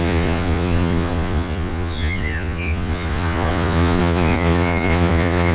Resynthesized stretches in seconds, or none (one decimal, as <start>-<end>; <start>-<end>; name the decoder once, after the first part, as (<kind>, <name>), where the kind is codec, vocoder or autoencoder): 0.0-5.5 (vocoder, Vocos)